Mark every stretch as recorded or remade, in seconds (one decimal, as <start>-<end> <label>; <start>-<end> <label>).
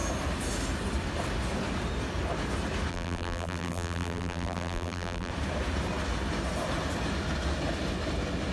0.0-2.9 recorded; 2.9-5.3 remade; 5.3-8.5 recorded